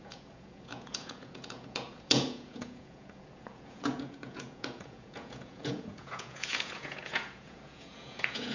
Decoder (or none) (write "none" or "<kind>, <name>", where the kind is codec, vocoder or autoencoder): vocoder, Vocos